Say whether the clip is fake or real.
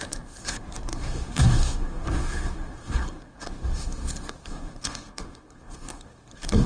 fake